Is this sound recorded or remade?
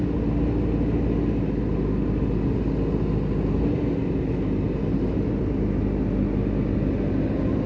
recorded